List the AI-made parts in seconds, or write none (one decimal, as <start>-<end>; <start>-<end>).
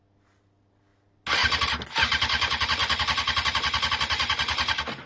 none